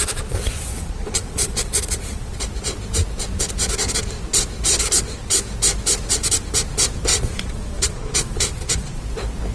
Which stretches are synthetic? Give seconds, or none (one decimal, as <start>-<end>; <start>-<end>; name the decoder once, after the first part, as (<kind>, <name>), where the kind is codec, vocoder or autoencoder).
0.0-2.4 (vocoder, Vocos); 7.1-9.0